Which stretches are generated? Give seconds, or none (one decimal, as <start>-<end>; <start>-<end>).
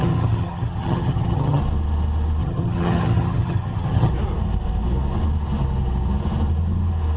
0.0-1.6; 2.4-4.1